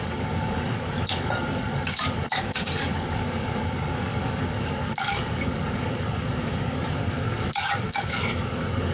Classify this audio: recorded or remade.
remade